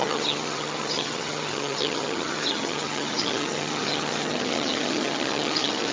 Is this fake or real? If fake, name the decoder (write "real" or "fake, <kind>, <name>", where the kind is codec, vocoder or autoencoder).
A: fake, vocoder, HiFi-GAN